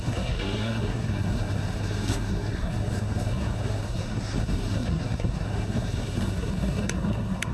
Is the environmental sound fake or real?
fake